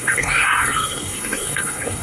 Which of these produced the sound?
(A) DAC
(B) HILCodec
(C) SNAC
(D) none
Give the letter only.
C